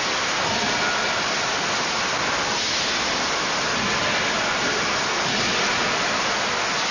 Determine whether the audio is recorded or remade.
recorded